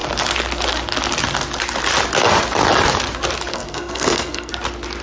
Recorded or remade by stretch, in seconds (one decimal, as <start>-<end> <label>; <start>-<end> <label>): 0.0-3.5 recorded; 3.5-4.5 remade; 4.5-5.0 recorded